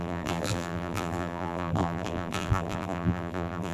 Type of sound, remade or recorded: remade